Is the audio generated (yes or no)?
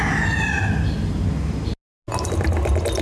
no